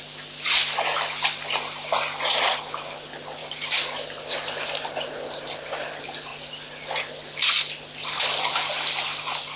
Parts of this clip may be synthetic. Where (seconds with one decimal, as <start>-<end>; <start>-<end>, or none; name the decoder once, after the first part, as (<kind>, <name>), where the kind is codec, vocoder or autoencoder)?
none